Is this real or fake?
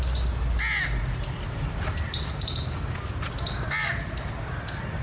real